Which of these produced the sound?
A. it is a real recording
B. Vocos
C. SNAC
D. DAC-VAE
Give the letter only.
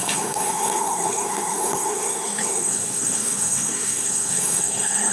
C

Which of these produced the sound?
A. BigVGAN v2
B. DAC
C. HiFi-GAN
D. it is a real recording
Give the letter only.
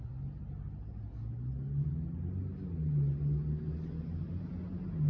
D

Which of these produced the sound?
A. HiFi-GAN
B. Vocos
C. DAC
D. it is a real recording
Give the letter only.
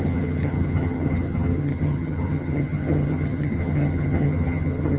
A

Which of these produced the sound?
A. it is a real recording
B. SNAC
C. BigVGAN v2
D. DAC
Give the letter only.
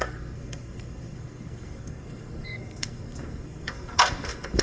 B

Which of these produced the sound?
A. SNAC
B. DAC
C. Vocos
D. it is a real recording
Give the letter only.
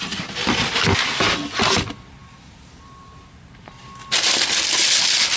D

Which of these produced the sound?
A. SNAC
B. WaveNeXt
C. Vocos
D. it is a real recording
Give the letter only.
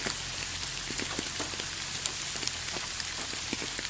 D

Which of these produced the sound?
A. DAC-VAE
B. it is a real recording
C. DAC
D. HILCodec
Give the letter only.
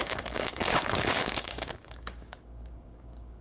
C